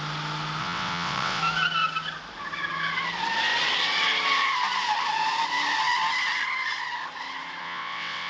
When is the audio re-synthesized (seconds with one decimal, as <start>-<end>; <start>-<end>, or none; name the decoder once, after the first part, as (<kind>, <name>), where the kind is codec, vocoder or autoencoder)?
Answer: 0.6-1.4 (vocoder, WaveNeXt); 7.6-8.3